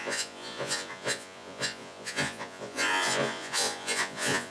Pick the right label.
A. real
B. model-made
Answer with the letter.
B